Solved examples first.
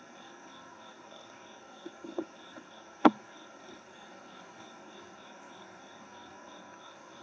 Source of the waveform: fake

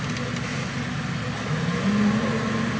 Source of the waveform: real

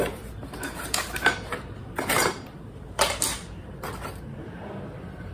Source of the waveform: fake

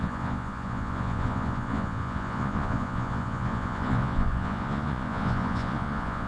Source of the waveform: fake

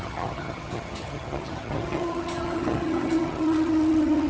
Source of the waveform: fake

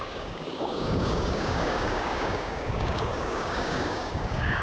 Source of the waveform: fake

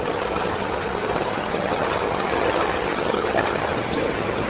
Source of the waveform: fake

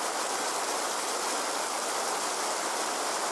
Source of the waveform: real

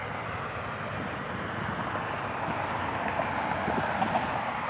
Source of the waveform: real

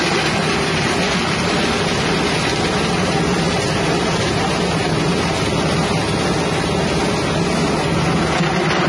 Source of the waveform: real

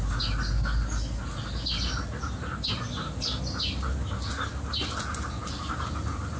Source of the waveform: real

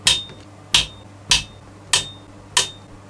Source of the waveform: real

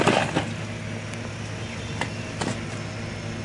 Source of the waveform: real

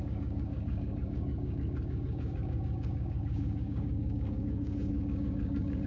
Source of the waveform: fake